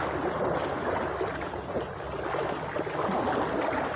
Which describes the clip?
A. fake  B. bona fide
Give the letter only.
B